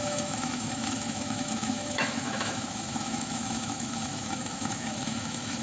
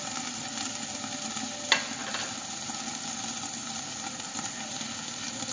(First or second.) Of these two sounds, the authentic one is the second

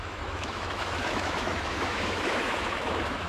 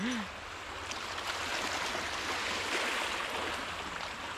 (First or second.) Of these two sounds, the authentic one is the second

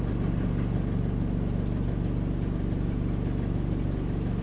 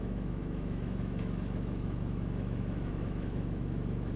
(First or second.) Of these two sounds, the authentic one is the first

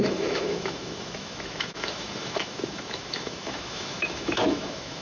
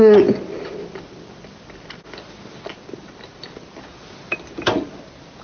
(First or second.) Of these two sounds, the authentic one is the second